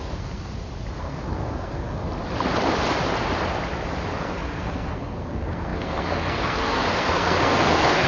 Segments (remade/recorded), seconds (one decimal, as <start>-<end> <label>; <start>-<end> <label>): 0.0-0.5 remade; 0.5-1.0 recorded; 1.0-2.0 remade; 2.0-4.2 recorded; 4.2-8.1 remade